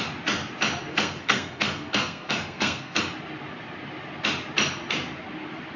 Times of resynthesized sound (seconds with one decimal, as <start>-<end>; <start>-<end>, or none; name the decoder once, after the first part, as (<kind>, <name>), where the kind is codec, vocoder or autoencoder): 0.9-3.0 (codec, SNAC)